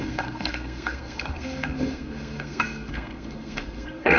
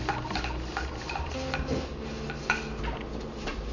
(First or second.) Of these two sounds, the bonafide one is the second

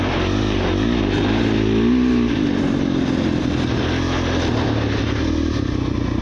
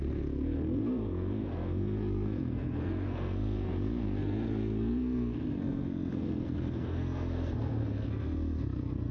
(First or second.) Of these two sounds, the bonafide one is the first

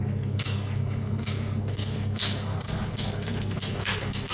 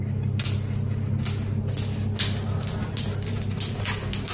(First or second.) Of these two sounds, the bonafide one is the second